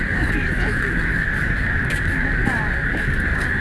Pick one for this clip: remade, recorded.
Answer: remade